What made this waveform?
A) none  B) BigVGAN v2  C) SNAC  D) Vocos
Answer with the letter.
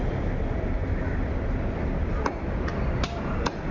A